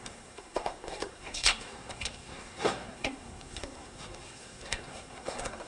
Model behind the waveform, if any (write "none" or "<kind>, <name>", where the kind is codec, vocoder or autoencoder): codec, SNAC